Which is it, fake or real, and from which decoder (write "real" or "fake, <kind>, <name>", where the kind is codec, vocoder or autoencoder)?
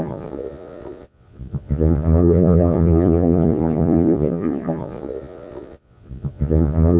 fake, vocoder, Vocos